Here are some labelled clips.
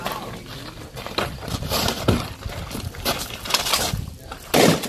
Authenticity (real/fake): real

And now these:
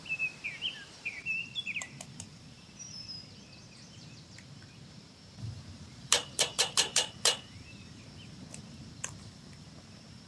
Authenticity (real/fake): fake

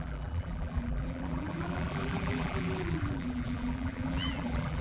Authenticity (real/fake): fake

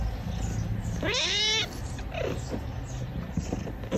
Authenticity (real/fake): real